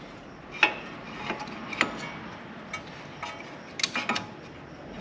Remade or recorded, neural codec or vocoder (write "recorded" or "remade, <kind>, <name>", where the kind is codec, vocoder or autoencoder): recorded